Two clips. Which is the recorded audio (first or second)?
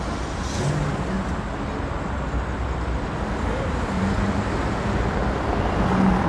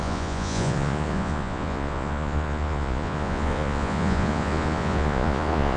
first